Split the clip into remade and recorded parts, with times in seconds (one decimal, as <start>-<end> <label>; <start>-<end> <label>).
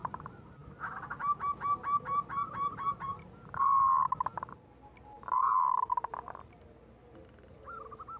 0.0-8.2 recorded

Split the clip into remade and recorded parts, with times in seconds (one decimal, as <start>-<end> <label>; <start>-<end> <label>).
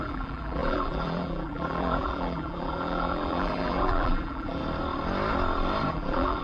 0.0-4.6 remade; 4.6-5.9 recorded; 5.9-6.4 remade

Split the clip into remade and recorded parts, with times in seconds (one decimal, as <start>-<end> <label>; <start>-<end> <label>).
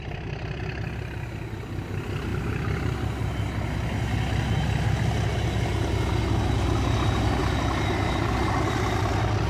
0.0-9.5 recorded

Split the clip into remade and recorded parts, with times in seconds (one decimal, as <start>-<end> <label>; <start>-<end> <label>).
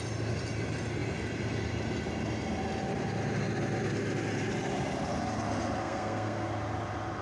0.0-5.8 recorded; 5.8-6.5 remade; 6.5-7.2 recorded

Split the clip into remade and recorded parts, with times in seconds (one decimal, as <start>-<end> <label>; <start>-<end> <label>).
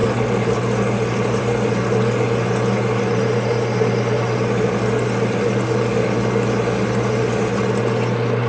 0.0-8.5 recorded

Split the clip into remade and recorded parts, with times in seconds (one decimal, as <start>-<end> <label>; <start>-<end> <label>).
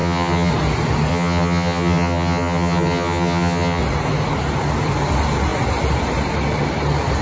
0.0-0.5 remade; 0.5-1.1 recorded; 1.1-3.8 remade; 3.8-7.2 recorded